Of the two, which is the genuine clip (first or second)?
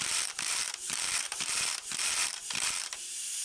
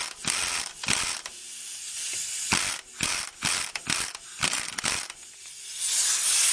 second